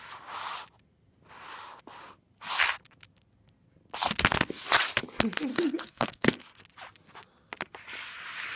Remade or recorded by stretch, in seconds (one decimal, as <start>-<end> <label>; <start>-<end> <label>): 0.0-5.5 recorded; 5.5-6.4 remade; 6.4-8.6 recorded